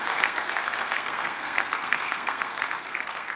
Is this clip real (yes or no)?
no